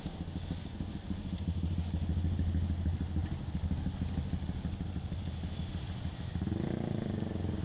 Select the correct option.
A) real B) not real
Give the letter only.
A